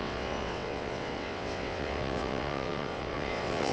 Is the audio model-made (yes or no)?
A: yes